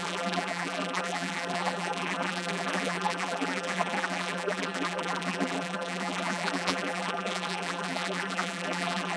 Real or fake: fake